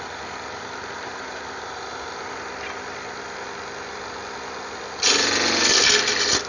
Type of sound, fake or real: real